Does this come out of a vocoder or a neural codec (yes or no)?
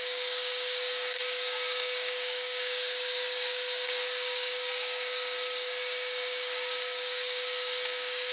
yes